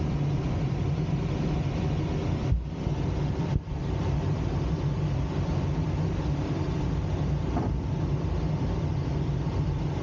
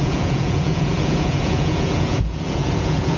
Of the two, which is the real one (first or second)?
first